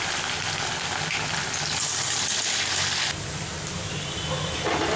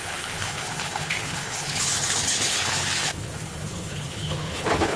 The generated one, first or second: second